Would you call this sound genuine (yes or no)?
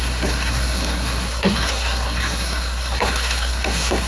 no